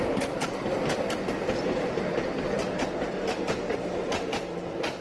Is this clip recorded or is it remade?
recorded